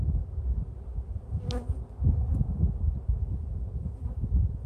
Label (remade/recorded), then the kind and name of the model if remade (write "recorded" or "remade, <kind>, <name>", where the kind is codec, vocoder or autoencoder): recorded